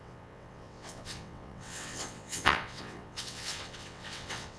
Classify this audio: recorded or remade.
remade